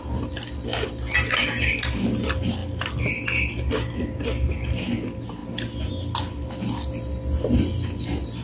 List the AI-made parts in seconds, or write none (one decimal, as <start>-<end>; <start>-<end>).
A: none